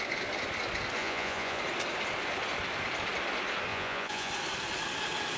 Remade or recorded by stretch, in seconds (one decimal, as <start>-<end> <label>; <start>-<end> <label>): 0.0-1.0 recorded; 1.0-1.6 remade; 1.6-3.7 recorded; 3.7-4.3 remade; 4.3-5.4 recorded

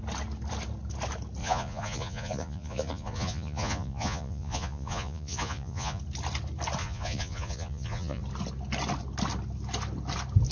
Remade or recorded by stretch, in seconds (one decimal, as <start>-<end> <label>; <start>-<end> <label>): 0.0-1.4 recorded; 1.4-6.0 remade; 6.0-6.8 recorded; 6.8-8.2 remade; 8.2-10.5 recorded

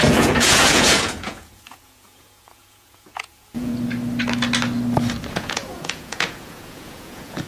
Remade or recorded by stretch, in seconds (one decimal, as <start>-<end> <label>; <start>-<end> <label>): 0.0-3.7 remade; 3.7-5.3 recorded; 5.3-7.5 remade